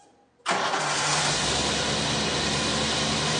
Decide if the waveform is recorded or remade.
recorded